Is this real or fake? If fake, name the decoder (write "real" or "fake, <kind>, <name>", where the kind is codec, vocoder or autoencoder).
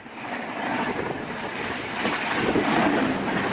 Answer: real